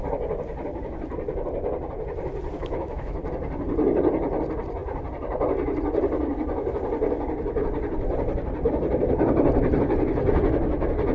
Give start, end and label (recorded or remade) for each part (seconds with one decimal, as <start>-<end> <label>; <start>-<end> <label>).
0.0-2.6 recorded; 2.6-3.2 remade; 3.2-11.1 recorded